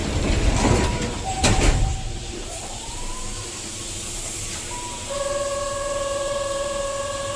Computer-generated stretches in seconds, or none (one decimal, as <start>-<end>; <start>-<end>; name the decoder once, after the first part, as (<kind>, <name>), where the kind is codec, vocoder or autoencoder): 0.0-7.4 (vocoder, BigVGAN v2)